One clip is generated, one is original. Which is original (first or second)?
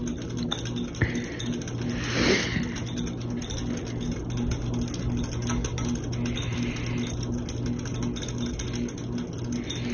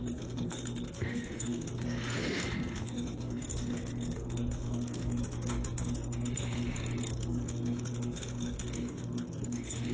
first